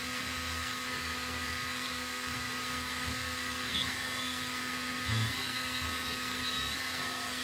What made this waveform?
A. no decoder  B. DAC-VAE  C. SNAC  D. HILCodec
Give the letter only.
C